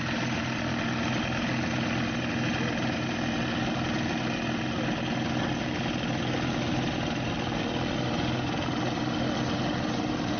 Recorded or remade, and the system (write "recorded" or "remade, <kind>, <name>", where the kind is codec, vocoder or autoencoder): recorded